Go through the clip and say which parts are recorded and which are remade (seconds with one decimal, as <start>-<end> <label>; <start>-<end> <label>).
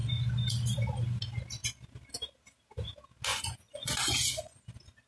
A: 0.0-3.3 recorded; 3.3-4.6 remade; 4.6-5.1 recorded